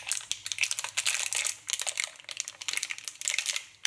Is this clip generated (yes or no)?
no